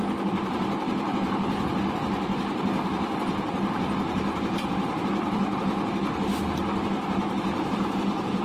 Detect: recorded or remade recorded